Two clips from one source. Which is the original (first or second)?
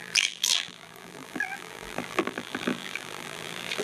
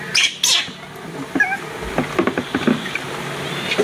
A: second